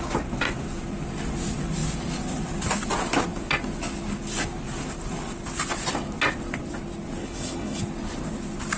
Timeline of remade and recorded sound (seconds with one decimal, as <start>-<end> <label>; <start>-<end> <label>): 0.0-7.2 recorded; 7.2-7.8 remade; 7.8-8.8 recorded